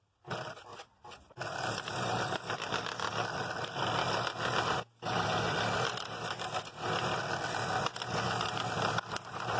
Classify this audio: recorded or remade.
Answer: recorded